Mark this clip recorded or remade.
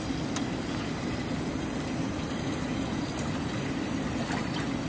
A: recorded